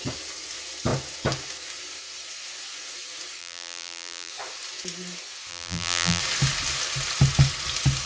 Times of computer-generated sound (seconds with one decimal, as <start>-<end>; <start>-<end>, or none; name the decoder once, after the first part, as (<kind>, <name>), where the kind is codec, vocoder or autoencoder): 3.4-4.3 (vocoder, BigVGAN v2); 5.5-6.2